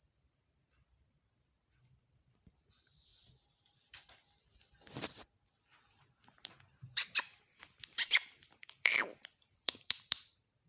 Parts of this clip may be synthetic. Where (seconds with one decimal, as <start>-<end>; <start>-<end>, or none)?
0.0-3.1; 6.1-10.7